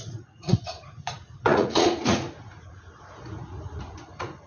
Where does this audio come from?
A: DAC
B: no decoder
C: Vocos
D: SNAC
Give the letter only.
C